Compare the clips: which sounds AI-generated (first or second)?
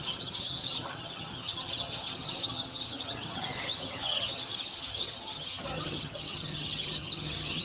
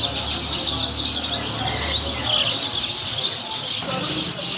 first